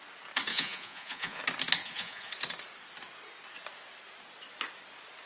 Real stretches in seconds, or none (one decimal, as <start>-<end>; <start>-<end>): 0.0-0.5; 1.4-1.8; 2.3-5.3